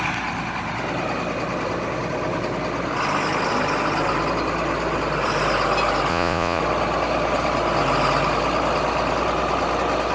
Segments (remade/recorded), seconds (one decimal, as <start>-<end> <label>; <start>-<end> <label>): 0.0-6.1 recorded; 6.1-6.6 remade; 6.6-10.1 recorded